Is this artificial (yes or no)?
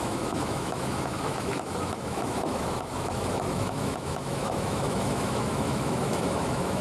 yes